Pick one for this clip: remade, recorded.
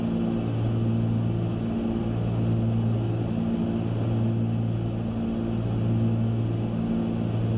recorded